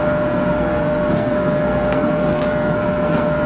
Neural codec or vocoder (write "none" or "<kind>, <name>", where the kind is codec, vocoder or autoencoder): codec, SNAC